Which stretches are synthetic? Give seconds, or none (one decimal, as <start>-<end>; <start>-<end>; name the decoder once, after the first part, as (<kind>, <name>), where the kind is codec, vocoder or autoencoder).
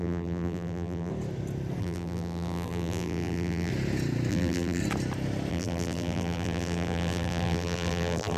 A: 0.0-1.1 (vocoder, BigVGAN v2); 1.8-3.7; 4.3-4.8; 5.5-8.4